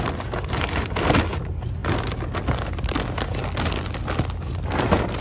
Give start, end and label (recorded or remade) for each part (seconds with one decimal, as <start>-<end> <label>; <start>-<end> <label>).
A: 0.0-5.2 recorded